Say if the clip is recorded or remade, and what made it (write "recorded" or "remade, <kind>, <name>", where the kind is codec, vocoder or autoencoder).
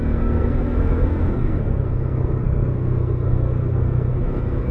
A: remade, codec, SNAC